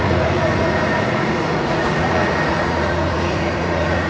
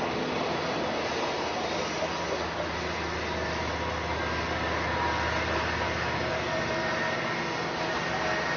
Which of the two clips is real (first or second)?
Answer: second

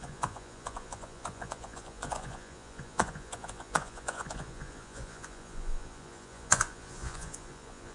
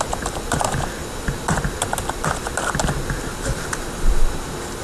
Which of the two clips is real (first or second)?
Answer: second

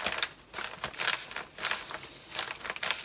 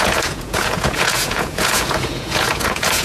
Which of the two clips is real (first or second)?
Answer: first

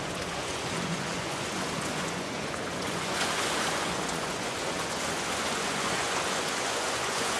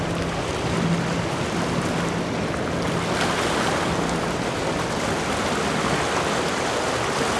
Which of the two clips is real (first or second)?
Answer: second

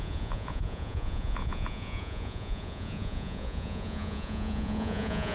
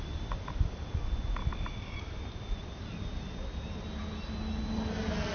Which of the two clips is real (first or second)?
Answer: second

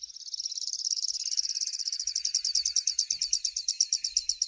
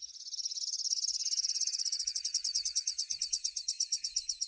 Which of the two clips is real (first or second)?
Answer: first